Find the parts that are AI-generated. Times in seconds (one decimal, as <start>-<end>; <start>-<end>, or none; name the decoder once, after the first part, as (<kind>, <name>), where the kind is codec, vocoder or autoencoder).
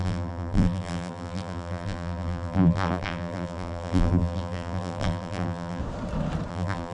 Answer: 0.0-5.8 (vocoder, BigVGAN v2); 6.5-6.9